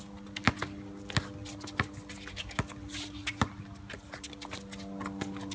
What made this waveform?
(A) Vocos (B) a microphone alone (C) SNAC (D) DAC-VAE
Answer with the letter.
B